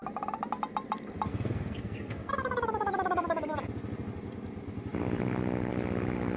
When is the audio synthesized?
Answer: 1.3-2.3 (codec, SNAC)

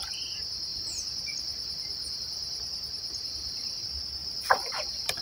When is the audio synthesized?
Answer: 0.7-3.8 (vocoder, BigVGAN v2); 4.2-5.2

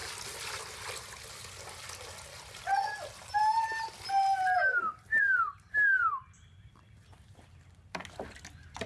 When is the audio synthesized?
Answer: none